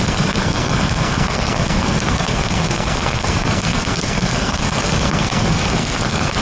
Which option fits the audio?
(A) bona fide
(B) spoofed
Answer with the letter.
B